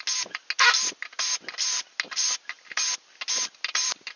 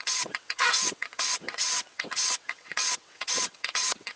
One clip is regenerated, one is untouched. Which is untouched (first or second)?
first